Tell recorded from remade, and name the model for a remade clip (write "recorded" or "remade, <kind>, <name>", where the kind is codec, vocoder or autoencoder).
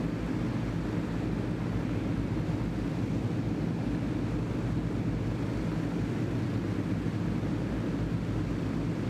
recorded